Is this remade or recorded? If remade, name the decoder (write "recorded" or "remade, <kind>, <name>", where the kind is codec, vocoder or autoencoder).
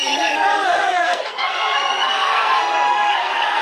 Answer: remade, codec, SNAC